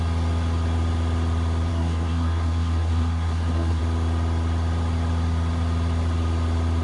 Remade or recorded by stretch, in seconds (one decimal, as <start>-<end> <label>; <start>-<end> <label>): 0.0-1.7 recorded; 1.7-3.8 remade; 3.8-6.8 recorded